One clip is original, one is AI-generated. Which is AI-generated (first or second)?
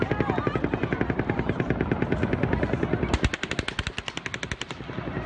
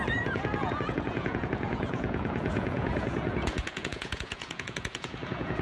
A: second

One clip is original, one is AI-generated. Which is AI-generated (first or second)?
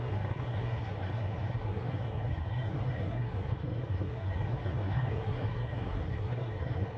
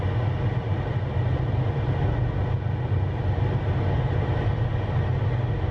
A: first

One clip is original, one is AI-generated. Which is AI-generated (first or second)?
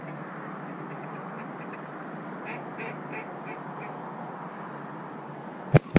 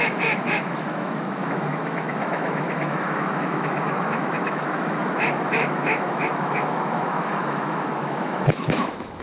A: second